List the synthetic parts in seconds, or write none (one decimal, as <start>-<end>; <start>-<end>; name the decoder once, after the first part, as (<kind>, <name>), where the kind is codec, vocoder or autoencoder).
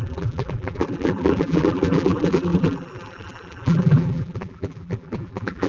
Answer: 0.0-5.7 (vocoder, BigVGAN v2)